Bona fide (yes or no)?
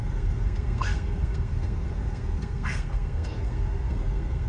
no